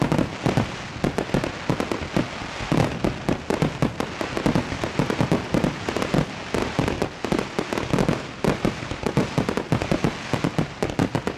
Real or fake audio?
real